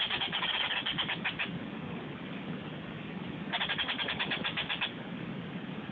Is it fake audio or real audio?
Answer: fake